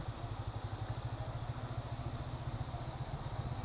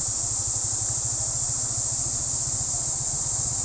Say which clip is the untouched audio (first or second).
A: first